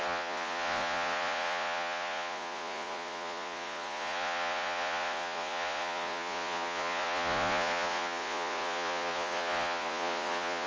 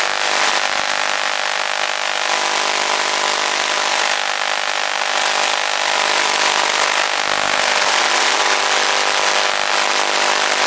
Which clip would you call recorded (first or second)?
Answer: second